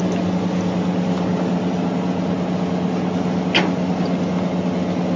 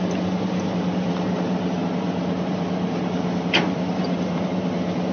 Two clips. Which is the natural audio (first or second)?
first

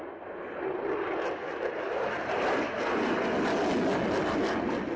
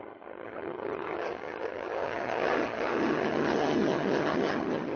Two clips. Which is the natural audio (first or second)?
first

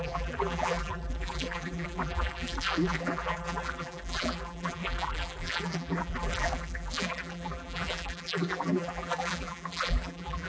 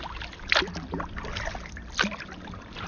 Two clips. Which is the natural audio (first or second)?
second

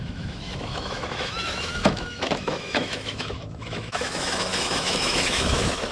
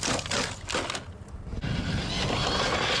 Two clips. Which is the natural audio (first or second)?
second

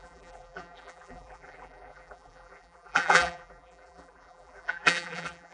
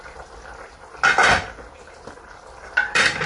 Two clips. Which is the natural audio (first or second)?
second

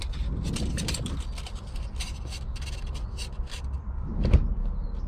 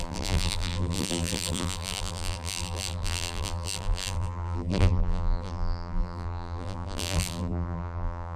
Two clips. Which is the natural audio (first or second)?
first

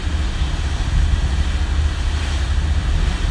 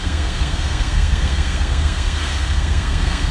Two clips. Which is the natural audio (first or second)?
first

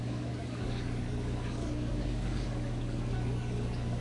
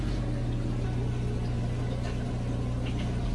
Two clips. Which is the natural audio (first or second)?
second